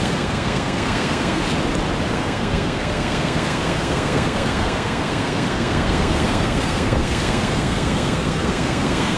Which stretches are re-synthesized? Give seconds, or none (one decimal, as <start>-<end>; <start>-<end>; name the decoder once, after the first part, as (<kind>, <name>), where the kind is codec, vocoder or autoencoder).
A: 0.0-1.4 (codec, SNAC); 2.1-9.2